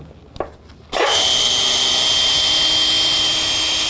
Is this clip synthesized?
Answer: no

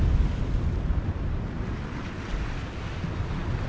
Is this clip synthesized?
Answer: no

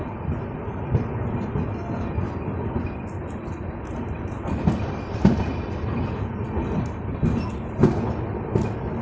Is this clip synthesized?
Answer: no